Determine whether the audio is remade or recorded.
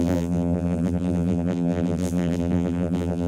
remade